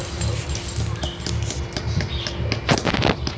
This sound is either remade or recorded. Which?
recorded